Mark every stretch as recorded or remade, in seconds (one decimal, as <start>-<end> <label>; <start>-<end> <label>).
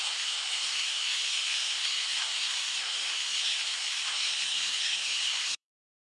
0.0-6.1 remade